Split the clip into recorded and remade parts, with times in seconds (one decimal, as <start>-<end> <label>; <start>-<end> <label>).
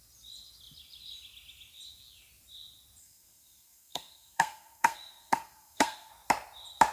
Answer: 0.0-3.0 recorded; 3.0-6.1 remade; 6.1-6.9 recorded